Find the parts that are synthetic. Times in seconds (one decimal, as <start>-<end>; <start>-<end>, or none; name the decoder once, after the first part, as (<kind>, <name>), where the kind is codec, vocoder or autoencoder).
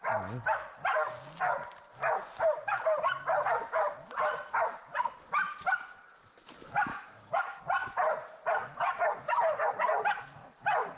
6.9-7.6 (codec, DAC)